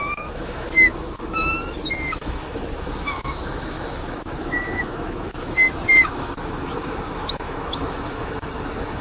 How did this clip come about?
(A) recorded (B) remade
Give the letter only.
B